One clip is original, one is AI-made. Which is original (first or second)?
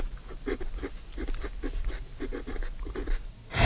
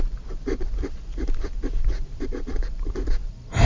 first